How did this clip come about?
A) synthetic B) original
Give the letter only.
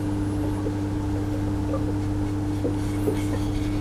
B